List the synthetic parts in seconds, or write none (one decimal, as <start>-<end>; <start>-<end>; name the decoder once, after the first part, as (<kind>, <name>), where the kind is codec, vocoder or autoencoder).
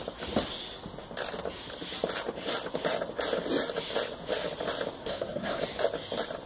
5.0-5.6 (codec, SNAC)